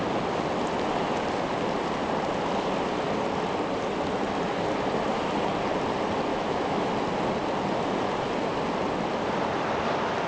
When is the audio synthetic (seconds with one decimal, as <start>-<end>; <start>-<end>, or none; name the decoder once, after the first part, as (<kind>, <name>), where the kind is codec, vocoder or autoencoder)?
6.3-6.9 (autoencoder, DAC-VAE)